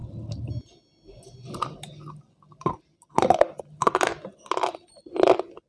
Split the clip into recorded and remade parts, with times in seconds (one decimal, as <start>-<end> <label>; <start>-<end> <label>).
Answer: 0.0-5.7 recorded